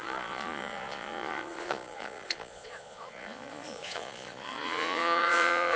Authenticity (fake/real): fake